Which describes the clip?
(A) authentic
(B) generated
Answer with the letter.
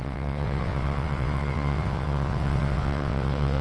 B